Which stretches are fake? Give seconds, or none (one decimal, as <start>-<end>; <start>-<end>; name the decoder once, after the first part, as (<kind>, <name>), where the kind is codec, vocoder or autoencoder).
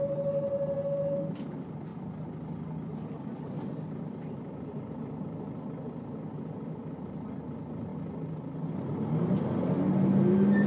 none